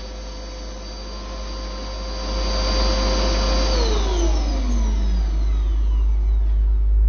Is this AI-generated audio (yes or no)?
no